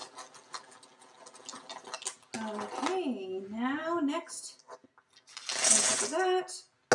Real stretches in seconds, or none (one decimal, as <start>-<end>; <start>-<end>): 0.0-6.9